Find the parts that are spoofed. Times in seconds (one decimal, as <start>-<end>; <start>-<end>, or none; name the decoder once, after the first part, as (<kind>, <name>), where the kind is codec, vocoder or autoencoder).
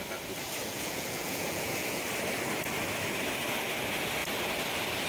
0.6-2.0 (vocoder, Vocos)